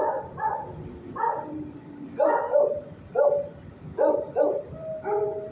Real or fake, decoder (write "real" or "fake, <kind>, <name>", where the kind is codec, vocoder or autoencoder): fake, vocoder, BigVGAN v2